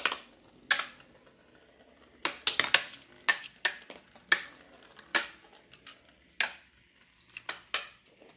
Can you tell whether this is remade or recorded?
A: recorded